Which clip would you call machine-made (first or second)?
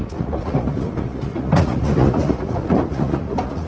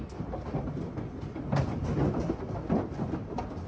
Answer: first